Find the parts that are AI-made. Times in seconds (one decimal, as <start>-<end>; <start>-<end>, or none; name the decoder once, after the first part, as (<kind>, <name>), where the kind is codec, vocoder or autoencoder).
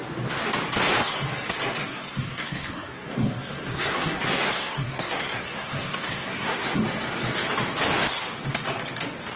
1.8-6.8 (codec, SNAC)